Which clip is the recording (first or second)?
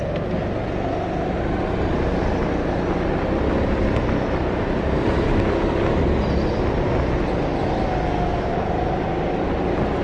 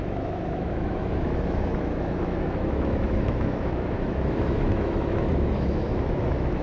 first